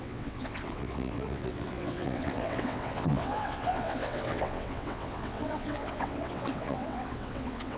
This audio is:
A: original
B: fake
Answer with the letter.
B